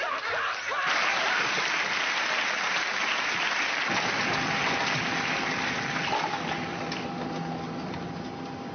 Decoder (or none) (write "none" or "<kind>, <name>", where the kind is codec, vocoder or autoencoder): none